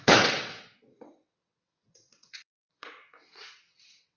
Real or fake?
fake